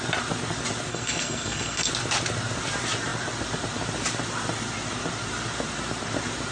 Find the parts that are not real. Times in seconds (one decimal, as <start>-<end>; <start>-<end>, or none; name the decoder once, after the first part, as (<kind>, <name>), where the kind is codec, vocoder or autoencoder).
0.9-1.9 (codec, SNAC)